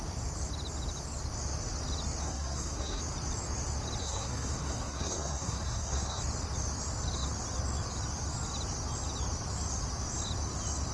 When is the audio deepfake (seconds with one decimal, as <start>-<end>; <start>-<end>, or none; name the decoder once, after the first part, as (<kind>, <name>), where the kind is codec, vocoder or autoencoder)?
2.2-3.0 (codec, SNAC); 4.0-6.2